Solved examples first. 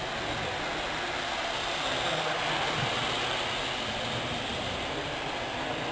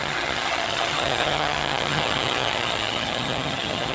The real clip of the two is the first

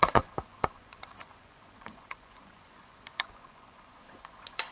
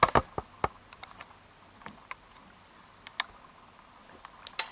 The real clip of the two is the second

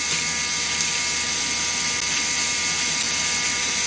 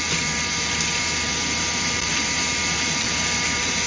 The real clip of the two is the first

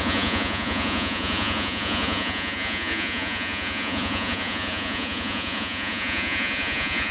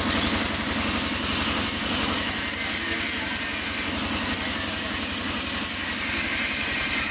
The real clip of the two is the second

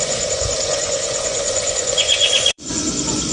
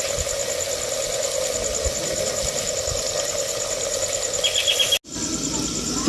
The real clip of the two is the second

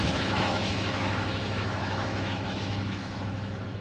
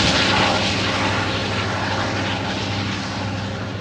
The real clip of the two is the second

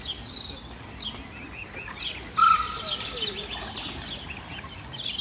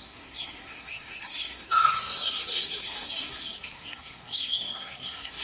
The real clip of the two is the first